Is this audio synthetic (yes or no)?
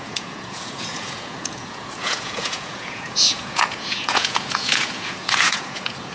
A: yes